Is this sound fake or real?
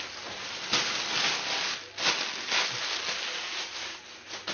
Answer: real